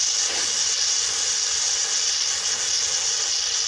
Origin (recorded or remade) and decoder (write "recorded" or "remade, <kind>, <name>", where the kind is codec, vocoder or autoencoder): recorded